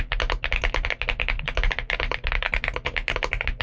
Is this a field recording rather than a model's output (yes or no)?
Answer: yes